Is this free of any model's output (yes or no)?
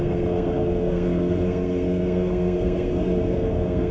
no